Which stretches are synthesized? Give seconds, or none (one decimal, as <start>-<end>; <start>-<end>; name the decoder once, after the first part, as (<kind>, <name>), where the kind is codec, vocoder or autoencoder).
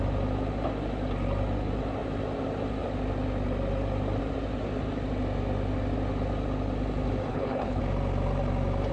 7.3-7.8 (codec, HILCodec)